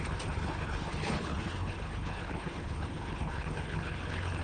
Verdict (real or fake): fake